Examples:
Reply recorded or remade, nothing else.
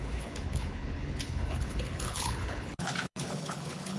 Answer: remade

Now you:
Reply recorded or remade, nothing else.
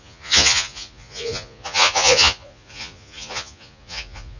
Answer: remade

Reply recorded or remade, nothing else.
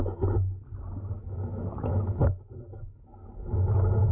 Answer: recorded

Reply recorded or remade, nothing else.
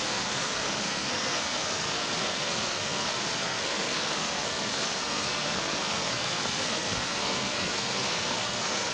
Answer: remade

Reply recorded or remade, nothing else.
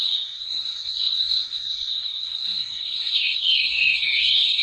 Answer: remade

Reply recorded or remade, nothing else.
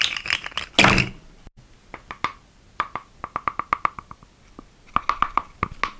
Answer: recorded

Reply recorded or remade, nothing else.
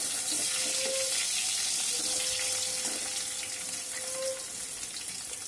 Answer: recorded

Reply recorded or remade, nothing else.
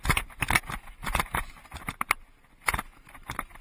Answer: recorded